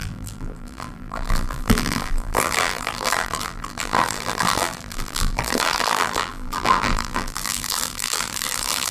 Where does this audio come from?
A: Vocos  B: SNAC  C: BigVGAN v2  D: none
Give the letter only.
C